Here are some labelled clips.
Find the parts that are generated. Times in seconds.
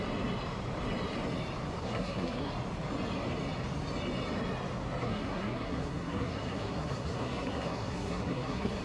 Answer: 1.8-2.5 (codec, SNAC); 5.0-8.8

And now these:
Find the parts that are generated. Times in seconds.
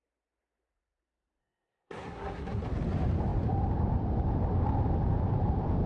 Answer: 1.4-2.6 (codec, SNAC)